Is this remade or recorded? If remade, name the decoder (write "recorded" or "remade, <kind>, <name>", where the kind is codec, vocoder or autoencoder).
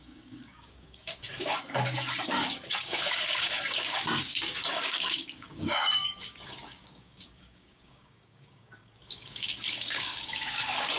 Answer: remade, codec, DAC